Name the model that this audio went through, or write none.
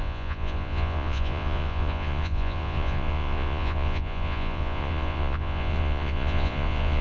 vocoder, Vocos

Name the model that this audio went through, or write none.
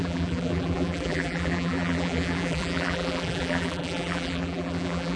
vocoder, BigVGAN v2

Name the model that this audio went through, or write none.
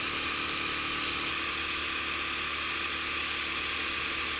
none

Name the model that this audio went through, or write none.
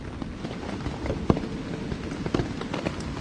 none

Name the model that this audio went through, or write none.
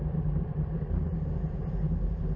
none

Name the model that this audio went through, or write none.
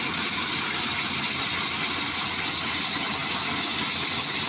none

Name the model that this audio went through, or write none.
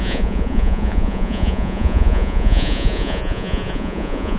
vocoder, Vocos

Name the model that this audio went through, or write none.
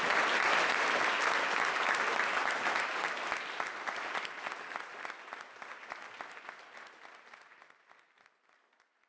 none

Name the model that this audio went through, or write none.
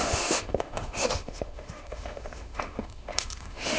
autoencoder, DAC-VAE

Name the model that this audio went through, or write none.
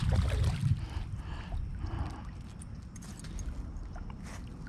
none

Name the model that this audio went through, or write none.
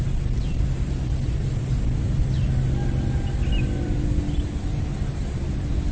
none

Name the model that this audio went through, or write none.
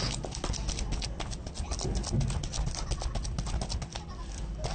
none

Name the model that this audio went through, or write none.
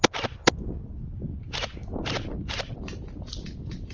none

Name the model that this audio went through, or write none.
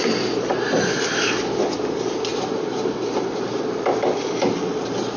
none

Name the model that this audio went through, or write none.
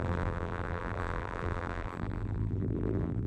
vocoder, BigVGAN v2